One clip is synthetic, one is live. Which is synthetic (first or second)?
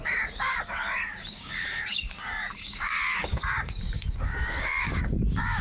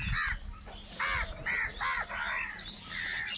first